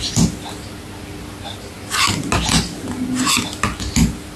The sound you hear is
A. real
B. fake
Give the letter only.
A